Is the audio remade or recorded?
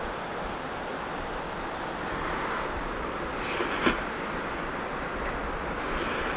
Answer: recorded